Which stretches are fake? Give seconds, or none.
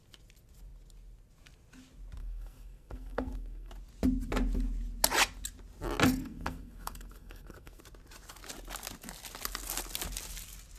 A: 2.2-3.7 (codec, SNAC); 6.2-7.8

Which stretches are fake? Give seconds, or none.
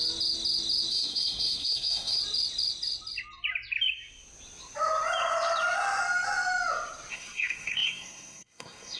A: 0.9-2.2 (codec, SNAC); 7.1-9.0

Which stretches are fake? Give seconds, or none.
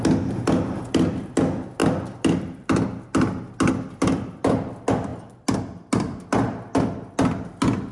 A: none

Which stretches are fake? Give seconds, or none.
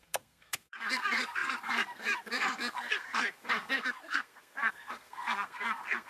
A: 0.0-6.1 (codec, SNAC)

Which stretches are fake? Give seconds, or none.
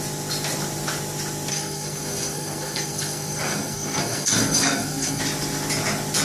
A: 1.5-5.2 (codec, SNAC)